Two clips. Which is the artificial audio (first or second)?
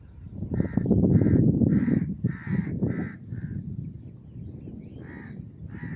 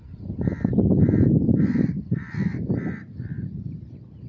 first